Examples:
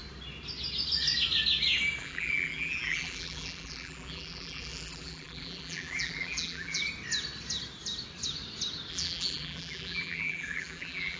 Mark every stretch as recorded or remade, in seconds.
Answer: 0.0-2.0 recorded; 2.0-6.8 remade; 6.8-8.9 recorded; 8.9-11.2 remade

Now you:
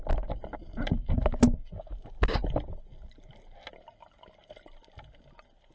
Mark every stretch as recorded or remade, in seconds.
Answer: 0.0-0.6 recorded; 0.6-1.2 remade; 1.2-5.7 recorded

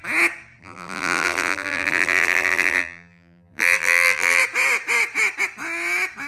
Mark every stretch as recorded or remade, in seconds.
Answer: 0.0-0.6 recorded; 0.6-4.4 remade; 4.4-6.3 recorded

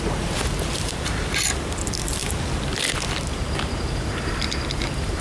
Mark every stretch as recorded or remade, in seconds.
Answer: 0.0-5.2 remade